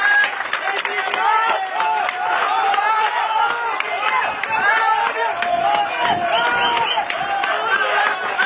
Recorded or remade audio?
recorded